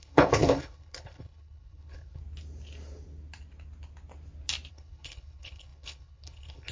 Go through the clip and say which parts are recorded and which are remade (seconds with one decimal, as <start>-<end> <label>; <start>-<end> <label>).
0.0-2.2 remade; 2.2-4.7 recorded; 4.7-6.7 remade